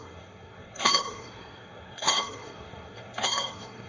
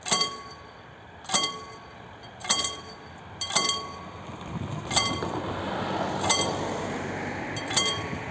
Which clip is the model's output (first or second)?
first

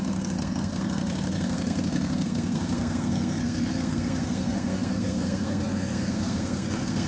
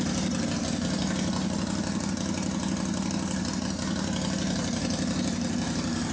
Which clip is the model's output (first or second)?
first